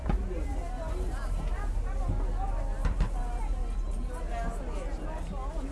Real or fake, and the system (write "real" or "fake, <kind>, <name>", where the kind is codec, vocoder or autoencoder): real